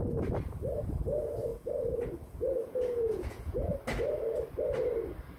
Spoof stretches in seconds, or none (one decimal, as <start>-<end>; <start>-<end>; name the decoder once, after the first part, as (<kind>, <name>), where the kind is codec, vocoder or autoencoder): 1.5-2.1 (vocoder, Vocos); 2.6-3.7